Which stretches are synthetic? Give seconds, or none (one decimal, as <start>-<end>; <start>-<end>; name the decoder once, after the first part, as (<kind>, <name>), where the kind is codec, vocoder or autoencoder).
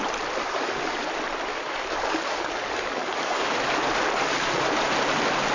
0.4-0.9 (codec, DAC); 1.5-3.6